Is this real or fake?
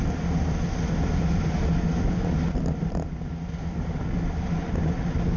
real